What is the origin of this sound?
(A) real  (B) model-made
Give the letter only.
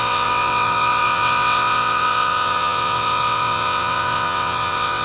B